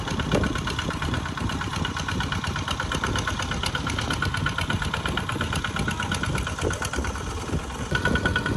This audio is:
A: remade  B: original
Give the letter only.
B